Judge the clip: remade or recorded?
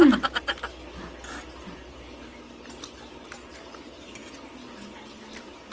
recorded